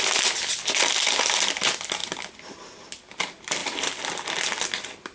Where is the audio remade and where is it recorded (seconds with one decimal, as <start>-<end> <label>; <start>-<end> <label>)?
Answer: 0.0-5.1 recorded